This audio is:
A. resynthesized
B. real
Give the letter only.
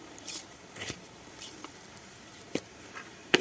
A